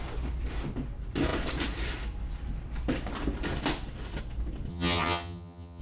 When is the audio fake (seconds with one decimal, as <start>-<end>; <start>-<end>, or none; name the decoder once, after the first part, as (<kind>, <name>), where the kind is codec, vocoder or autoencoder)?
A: 4.7-5.8 (vocoder, HiFi-GAN)